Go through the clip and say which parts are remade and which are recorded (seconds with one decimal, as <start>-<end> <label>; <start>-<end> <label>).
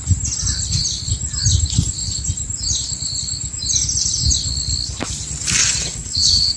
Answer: 0.0-5.6 recorded; 5.6-6.6 remade